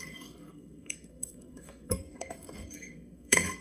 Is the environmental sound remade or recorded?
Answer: remade